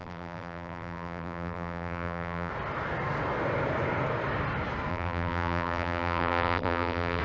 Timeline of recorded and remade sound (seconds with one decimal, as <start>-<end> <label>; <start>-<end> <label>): 0.0-2.5 remade; 2.5-4.9 recorded; 4.9-7.2 remade